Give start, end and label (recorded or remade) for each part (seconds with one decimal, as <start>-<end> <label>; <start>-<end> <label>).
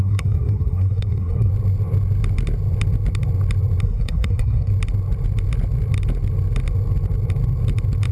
0.0-1.5 remade; 1.5-3.8 recorded; 3.8-4.7 remade; 4.7-8.1 recorded